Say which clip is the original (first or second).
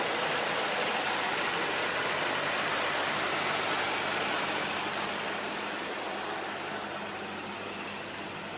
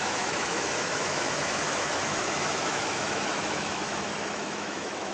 first